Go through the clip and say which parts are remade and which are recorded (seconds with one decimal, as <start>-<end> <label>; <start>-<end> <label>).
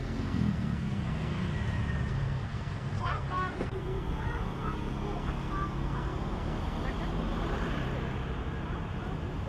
0.0-1.5 remade; 1.5-2.1 recorded; 2.1-6.8 remade; 6.8-9.5 recorded